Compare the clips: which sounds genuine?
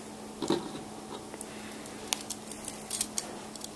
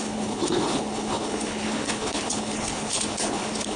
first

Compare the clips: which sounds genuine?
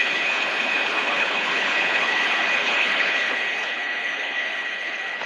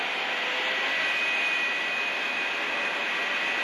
second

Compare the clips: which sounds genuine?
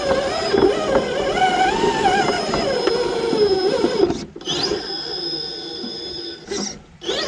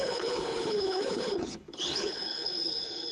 first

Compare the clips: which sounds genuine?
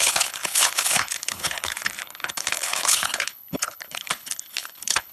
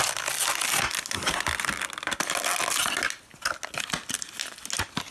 second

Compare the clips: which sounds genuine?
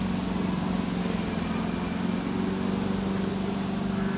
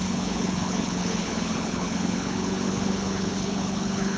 first